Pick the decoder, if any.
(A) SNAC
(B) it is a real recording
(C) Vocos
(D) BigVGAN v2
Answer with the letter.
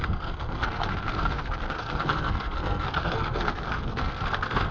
A